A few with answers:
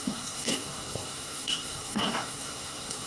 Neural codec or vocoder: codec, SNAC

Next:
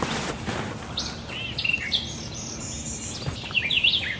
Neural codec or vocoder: none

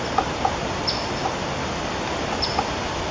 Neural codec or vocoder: none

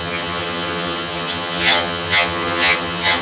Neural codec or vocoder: vocoder, HiFi-GAN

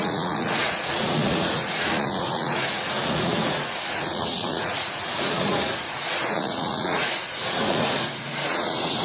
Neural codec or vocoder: vocoder, Vocos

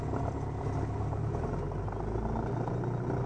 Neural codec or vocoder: none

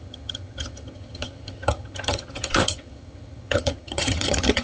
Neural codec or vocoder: vocoder, HiFi-GAN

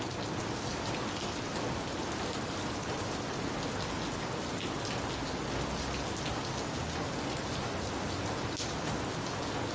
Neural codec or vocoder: none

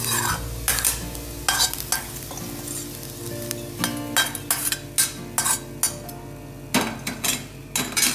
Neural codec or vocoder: none